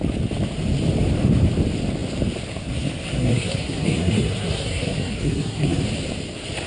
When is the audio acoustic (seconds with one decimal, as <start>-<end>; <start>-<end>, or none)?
0.0-3.1; 5.8-6.7